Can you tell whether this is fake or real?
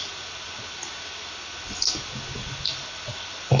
real